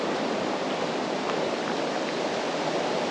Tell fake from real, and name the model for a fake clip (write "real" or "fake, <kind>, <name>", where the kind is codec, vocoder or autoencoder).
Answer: real